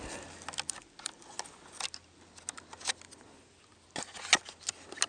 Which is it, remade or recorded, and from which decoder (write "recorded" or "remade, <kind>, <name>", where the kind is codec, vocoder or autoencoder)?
recorded